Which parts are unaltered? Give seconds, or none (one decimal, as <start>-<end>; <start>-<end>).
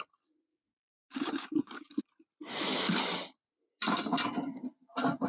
0.0-0.5; 2.0-5.3